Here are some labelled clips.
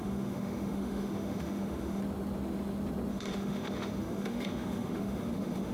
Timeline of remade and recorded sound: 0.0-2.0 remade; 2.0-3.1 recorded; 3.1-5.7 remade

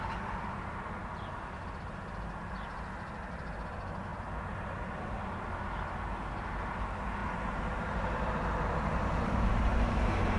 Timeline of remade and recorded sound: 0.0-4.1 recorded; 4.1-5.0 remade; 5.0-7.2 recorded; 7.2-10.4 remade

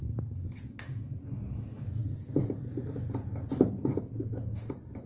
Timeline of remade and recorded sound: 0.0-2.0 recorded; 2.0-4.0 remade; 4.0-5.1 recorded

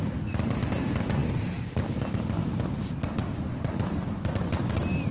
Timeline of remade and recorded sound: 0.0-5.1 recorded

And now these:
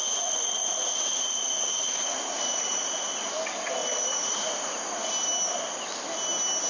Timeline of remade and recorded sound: 0.0-2.9 remade; 2.9-3.8 recorded; 3.8-5.1 remade; 5.1-6.7 recorded

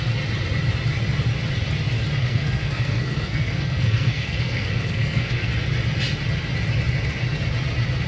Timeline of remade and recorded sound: 0.0-2.2 recorded; 2.2-5.5 remade; 5.5-8.1 recorded

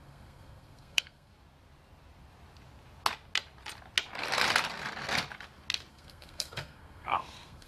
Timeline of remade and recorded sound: 0.0-1.3 remade; 1.3-5.9 recorded; 5.9-7.7 remade